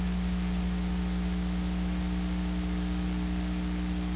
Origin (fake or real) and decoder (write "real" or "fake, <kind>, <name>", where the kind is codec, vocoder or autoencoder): real